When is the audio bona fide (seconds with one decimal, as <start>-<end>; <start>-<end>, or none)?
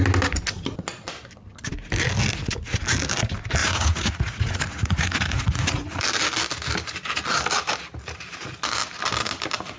0.0-3.6; 6.0-9.8